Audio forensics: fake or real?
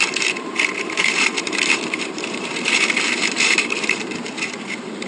fake